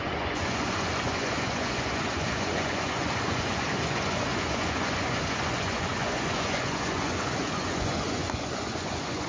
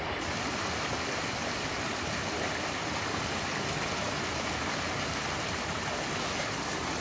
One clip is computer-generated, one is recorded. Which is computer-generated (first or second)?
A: first